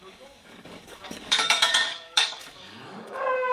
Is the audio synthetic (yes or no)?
yes